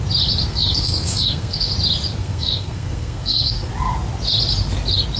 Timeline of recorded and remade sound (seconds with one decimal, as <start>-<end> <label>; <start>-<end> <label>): 0.0-0.4 recorded; 0.4-1.7 remade; 1.7-2.2 recorded; 2.2-3.7 remade; 3.7-5.2 recorded